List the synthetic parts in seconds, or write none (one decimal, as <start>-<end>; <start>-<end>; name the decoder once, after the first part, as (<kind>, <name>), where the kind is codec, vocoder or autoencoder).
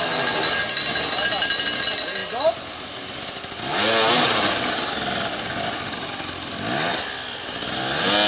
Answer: none